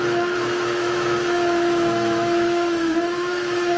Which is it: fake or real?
fake